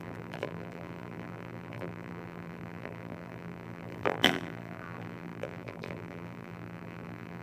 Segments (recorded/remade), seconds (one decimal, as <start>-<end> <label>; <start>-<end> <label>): 0.0-7.4 remade